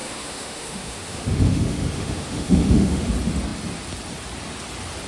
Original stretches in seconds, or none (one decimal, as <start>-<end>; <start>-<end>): 3.1-5.1